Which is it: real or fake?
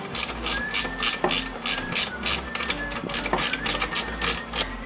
real